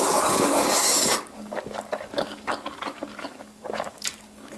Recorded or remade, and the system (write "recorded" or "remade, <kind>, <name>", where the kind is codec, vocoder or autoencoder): remade, codec, DAC